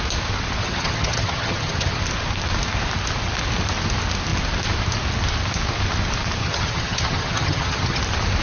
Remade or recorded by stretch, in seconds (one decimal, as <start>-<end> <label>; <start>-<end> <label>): 0.0-0.6 recorded; 0.6-2.0 remade; 2.0-6.4 recorded; 6.4-8.0 remade; 8.0-8.4 recorded